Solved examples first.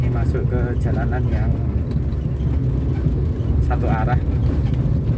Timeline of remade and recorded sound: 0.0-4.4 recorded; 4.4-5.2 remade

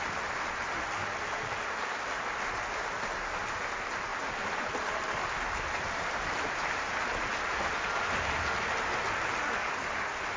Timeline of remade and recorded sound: 0.0-4.1 recorded; 4.1-6.9 remade; 6.9-10.4 recorded

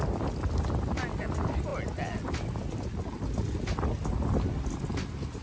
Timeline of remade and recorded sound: 0.0-5.4 recorded

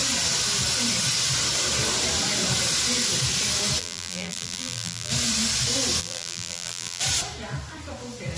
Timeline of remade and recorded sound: 0.0-3.8 recorded; 3.8-5.1 remade; 5.1-6.0 recorded; 6.0-7.0 remade; 7.0-8.4 recorded

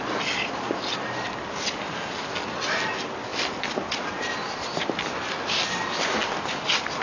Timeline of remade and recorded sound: 0.0-3.3 recorded; 3.3-4.0 remade; 4.0-7.0 recorded